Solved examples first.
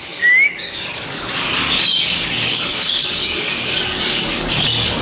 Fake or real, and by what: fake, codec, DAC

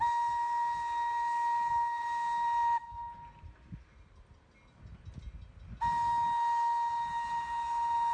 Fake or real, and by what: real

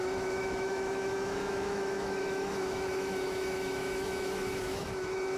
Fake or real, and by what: fake, autoencoder, DAC-VAE